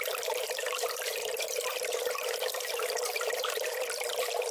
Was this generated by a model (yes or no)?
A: yes